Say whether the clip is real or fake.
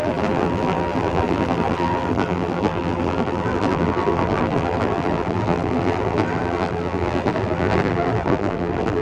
fake